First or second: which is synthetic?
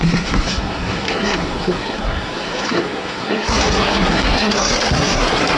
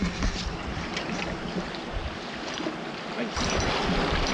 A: first